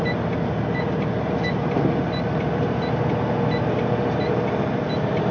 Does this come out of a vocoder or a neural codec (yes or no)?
no